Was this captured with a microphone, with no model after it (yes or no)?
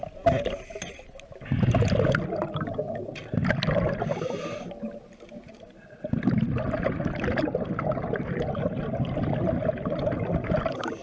yes